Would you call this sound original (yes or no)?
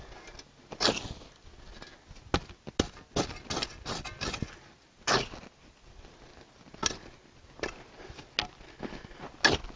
yes